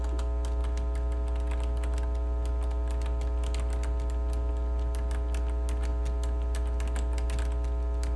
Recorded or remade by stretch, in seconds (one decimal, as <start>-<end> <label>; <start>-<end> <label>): 0.0-8.2 recorded